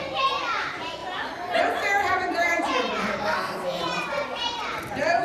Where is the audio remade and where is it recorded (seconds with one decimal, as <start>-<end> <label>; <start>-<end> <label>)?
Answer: 0.0-3.1 recorded; 3.1-3.8 remade; 3.8-5.2 recorded